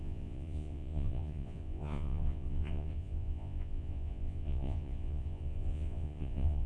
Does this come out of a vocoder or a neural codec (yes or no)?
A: yes